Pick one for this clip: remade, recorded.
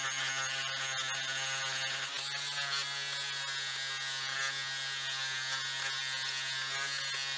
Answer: recorded